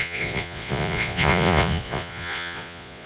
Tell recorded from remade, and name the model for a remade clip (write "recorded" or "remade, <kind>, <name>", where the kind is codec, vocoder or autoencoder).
remade, vocoder, Vocos